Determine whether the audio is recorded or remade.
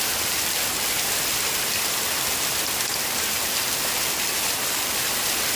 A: recorded